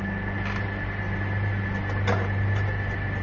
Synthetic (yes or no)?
no